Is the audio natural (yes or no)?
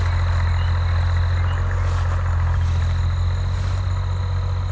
yes